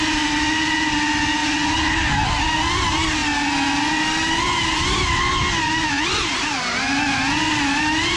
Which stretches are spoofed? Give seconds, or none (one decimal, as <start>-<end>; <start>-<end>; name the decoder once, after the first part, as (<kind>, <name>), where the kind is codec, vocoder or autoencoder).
none

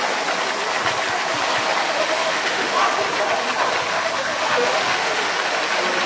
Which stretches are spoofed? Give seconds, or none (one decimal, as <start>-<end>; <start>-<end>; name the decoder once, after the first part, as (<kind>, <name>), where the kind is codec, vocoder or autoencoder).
1.8-2.7 (autoencoder, DAC-VAE); 3.9-5.3

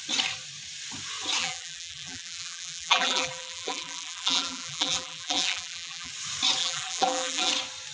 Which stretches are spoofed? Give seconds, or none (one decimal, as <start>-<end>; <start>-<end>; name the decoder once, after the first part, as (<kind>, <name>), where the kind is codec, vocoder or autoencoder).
1.4-6.1 (vocoder, BigVGAN v2); 6.6-7.5

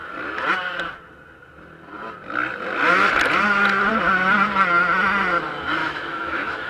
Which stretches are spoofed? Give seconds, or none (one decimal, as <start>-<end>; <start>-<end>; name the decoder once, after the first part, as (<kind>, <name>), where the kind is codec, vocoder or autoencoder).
5.8-6.7 (autoencoder, DAC-VAE)

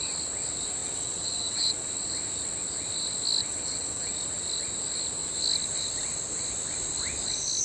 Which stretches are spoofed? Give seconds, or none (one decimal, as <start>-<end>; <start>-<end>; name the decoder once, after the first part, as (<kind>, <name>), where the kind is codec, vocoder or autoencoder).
0.8-1.9 (vocoder, WaveNeXt); 3.4-4.1

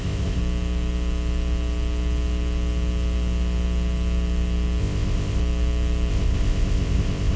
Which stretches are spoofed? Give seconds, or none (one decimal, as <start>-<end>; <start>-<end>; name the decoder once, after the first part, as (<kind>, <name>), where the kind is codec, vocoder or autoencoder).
0.0-0.4 (codec, ZipCodec); 4.8-5.4; 6.1-7.4

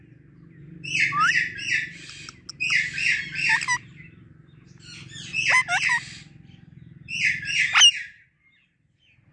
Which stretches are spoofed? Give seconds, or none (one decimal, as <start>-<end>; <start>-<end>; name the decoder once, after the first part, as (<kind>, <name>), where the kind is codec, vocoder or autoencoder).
none

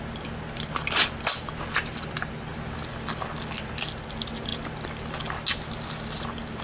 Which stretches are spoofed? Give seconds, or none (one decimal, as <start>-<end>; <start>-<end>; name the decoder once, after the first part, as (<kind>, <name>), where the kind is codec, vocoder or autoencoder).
none